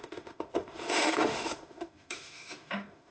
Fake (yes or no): yes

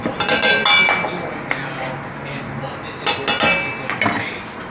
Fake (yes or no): no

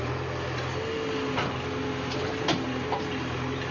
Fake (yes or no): no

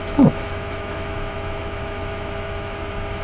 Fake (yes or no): yes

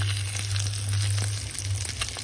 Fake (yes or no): no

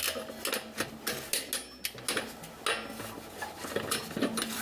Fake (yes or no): no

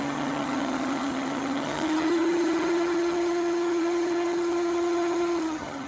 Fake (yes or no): yes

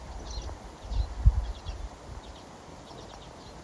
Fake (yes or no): no